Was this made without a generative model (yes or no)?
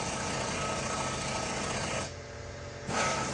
yes